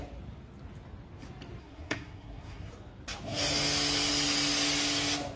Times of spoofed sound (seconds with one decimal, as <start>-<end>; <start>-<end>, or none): 1.6-2.7